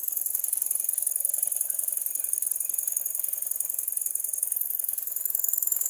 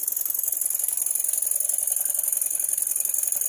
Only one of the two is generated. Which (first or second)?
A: first